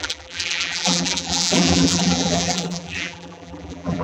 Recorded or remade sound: remade